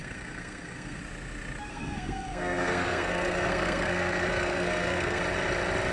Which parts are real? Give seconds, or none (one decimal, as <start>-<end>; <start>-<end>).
1.0-1.7; 5.2-5.9